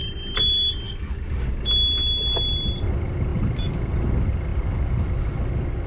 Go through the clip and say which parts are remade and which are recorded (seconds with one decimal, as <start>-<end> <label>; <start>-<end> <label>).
0.0-5.9 recorded